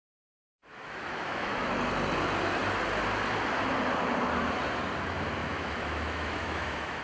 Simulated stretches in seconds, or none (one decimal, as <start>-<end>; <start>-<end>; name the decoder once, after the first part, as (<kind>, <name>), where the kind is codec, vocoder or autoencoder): 0.7-1.7 (autoencoder, DAC-VAE); 5.4-7.0